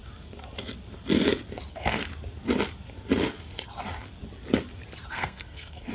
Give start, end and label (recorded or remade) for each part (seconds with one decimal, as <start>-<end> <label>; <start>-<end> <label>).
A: 0.0-1.7 recorded; 1.7-2.1 remade; 2.1-5.1 recorded; 5.1-5.9 remade